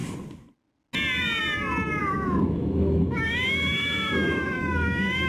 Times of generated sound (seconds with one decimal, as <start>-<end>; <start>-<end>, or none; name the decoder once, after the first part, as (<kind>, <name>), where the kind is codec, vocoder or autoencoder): 2.0-5.3 (autoencoder, DAC-VAE)